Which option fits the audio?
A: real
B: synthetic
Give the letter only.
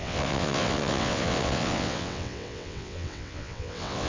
B